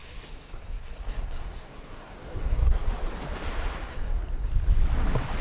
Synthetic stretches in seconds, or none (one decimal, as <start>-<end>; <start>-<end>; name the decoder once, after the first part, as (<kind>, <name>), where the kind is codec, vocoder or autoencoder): 0.0-2.9 (codec, SNAC); 3.9-4.5